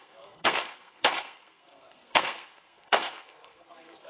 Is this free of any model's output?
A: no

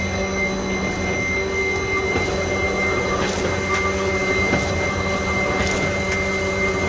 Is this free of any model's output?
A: yes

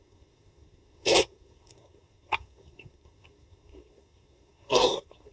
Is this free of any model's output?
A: no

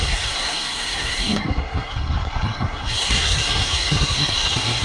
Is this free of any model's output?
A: no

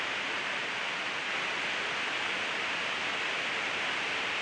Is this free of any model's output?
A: yes